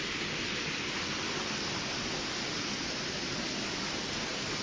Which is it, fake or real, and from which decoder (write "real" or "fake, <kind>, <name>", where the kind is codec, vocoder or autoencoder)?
real